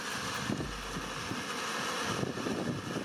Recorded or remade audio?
recorded